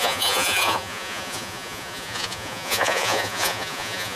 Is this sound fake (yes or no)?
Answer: yes